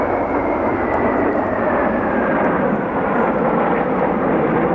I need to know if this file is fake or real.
real